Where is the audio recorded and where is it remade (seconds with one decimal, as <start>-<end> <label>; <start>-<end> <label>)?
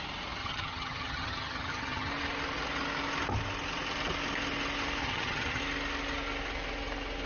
0.0-0.4 recorded; 0.4-2.1 remade; 2.1-5.0 recorded; 5.0-5.6 remade; 5.6-7.3 recorded